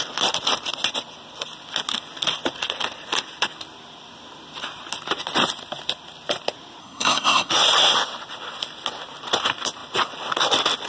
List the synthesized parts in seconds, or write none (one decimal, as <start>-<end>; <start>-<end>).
6.8-7.5